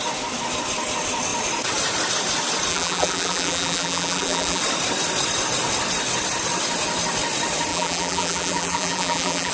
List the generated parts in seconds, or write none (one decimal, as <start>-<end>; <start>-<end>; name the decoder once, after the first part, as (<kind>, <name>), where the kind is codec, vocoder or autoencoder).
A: 2.7-4.6 (vocoder, BigVGAN v2); 7.7-9.5